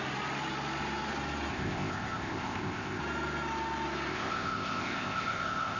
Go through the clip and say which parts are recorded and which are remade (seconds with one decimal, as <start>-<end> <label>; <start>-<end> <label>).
0.0-1.5 recorded; 1.5-3.0 remade; 3.0-4.1 recorded; 4.1-5.8 remade